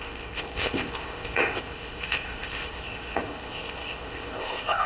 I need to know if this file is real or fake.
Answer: fake